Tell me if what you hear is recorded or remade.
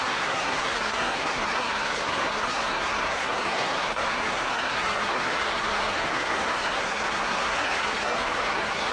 remade